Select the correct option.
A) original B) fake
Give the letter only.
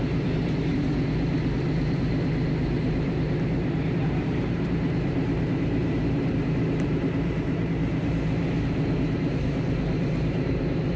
B